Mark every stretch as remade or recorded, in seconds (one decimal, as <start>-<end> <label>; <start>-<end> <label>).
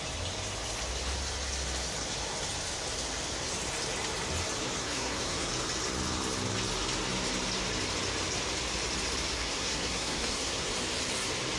0.0-4.8 recorded; 4.8-5.5 remade; 5.5-9.3 recorded; 9.3-10.7 remade; 10.7-11.6 recorded